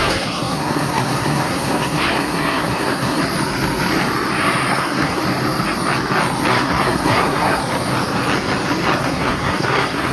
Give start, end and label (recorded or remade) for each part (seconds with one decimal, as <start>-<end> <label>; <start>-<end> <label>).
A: 0.0-3.2 remade; 3.2-4.7 recorded; 4.7-5.2 remade; 5.2-6.5 recorded; 6.5-7.6 remade; 7.6-9.0 recorded; 9.0-10.1 remade